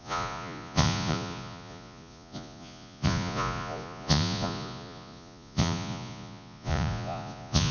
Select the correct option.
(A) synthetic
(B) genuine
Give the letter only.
A